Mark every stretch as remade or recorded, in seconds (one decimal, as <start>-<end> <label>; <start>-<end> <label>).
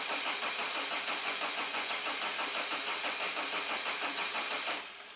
0.0-1.2 recorded; 1.2-1.9 remade; 1.9-5.2 recorded